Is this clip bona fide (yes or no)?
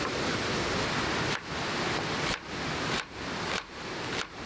yes